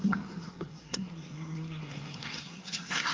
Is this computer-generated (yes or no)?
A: yes